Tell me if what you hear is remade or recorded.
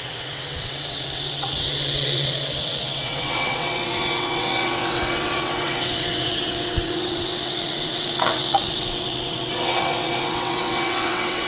remade